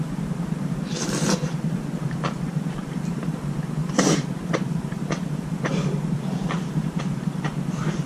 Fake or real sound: fake